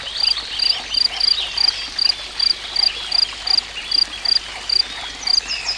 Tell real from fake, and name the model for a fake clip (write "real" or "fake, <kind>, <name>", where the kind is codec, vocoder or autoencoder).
real